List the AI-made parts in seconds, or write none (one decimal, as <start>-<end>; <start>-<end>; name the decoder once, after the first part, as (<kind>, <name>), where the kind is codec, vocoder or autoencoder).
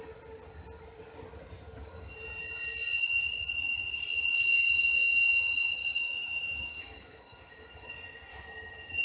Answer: 5.8-7.9 (autoencoder, DAC-VAE); 8.3-9.0